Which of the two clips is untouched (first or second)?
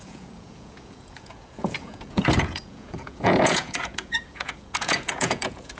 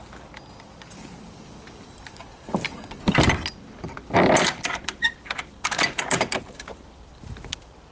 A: second